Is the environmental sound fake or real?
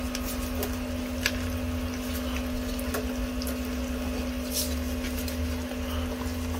real